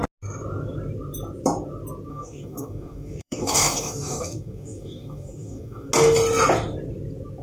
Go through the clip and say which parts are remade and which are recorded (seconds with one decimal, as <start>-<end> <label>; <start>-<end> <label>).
0.0-2.1 recorded; 2.1-5.9 remade; 5.9-7.4 recorded